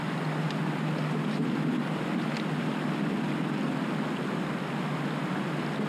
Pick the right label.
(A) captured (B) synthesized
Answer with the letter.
A